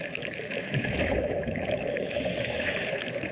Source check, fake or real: fake